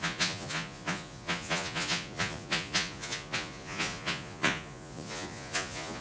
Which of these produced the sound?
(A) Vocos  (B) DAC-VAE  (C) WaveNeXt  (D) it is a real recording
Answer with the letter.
A